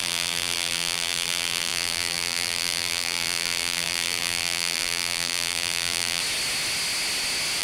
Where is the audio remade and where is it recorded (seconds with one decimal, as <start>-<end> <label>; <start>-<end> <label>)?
0.0-6.2 remade; 6.2-7.6 recorded